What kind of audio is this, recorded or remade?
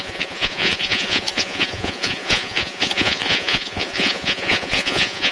remade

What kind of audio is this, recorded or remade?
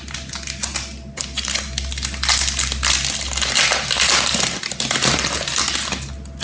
recorded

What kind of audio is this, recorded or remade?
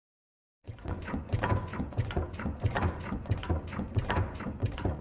remade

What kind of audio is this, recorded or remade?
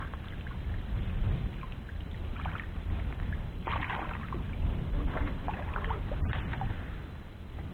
remade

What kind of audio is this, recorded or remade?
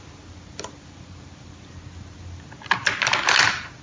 recorded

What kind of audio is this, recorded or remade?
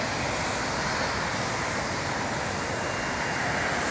recorded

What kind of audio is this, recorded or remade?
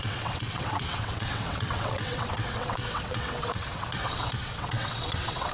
remade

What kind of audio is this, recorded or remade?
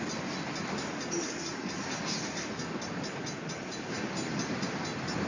recorded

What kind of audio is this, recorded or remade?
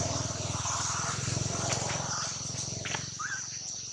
recorded